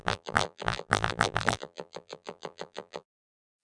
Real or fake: fake